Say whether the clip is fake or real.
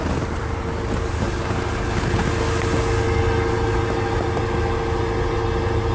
real